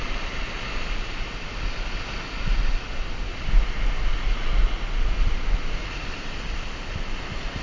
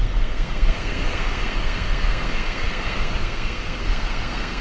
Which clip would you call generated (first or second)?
second